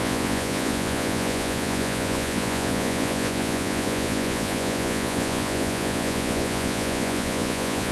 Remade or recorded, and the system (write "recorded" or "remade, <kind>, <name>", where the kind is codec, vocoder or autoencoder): remade, vocoder, Vocos